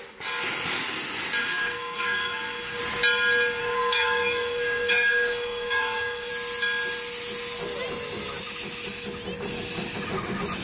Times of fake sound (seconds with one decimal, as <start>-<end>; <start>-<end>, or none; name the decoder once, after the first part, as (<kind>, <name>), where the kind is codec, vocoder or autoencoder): 1.4-2.8 (codec, SNAC); 3.6-6.3